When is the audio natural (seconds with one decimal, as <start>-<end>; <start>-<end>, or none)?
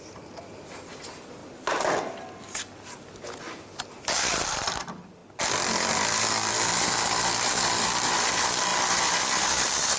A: 1.4-4.4; 5.2-6.3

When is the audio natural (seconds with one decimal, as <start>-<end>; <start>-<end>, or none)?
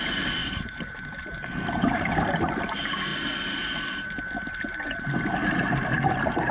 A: 0.0-0.4; 2.1-6.5